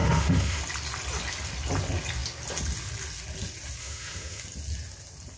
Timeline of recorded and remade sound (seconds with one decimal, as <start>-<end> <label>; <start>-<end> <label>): 0.0-0.6 remade; 0.6-3.8 recorded; 3.8-4.4 remade; 4.4-5.4 recorded

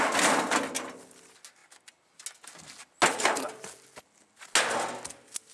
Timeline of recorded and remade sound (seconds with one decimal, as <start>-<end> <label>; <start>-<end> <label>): 0.0-5.5 recorded